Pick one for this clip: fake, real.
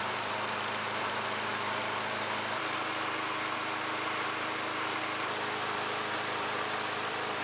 fake